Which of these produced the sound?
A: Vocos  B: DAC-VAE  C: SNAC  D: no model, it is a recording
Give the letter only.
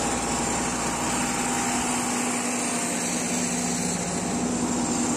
D